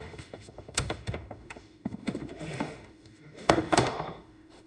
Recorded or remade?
remade